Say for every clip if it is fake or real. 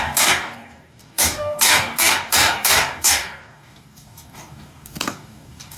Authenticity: fake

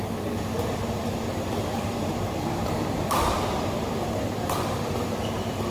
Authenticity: fake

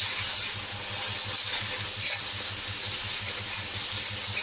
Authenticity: real